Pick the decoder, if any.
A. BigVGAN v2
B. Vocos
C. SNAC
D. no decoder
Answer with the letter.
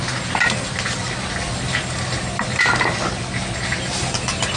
D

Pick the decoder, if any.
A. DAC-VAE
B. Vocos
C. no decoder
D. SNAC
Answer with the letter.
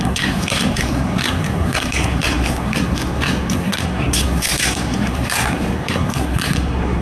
D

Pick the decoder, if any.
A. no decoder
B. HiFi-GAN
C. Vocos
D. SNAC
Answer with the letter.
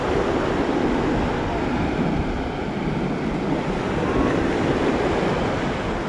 A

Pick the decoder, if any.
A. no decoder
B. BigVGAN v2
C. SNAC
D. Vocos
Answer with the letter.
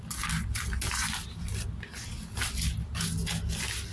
A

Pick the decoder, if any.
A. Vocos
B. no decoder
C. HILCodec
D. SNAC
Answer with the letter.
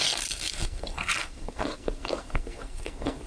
D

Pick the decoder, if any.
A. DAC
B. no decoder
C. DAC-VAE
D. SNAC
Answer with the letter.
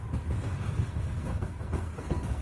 D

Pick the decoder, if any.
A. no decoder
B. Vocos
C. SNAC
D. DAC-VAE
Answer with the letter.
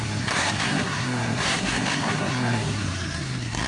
C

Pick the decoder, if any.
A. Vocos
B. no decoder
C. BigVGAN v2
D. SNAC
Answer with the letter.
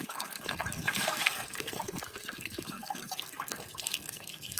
D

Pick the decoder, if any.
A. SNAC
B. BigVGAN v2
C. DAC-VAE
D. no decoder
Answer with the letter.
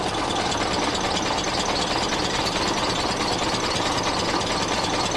D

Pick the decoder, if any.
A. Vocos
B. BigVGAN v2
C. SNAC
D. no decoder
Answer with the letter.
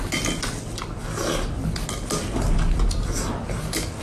D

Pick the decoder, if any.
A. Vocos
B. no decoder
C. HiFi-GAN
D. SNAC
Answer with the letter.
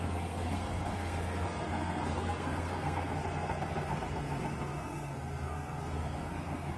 D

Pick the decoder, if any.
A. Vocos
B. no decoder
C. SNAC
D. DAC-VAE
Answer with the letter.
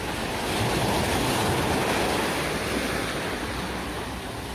B